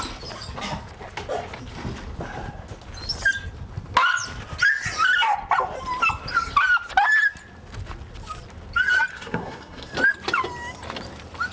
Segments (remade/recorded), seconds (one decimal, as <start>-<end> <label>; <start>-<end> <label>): 0.0-9.1 recorded; 9.1-9.9 remade; 9.9-11.5 recorded